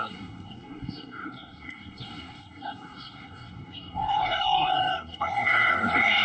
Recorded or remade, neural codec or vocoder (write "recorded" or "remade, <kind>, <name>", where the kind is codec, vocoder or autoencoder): remade, codec, SNAC